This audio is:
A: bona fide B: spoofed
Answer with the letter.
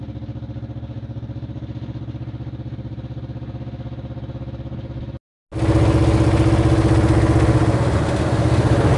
A